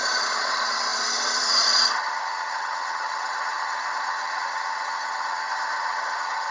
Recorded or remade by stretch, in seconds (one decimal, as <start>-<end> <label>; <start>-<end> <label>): 0.0-6.5 remade